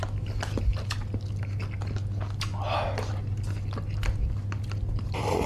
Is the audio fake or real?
real